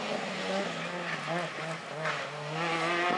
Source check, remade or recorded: recorded